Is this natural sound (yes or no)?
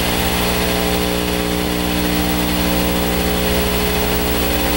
yes